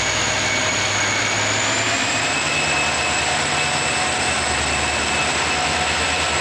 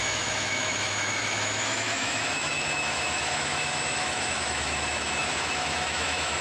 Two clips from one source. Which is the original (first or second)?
first